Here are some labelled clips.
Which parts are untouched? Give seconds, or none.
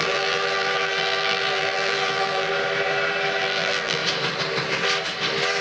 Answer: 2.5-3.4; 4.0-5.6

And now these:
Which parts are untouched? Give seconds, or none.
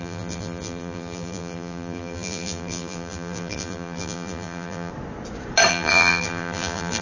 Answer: 4.9-5.7